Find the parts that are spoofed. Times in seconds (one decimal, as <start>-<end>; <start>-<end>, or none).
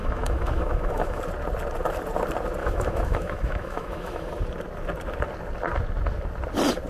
0.0-1.2; 2.6-4.3